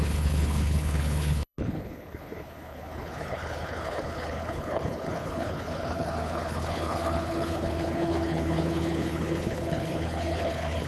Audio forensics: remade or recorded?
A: remade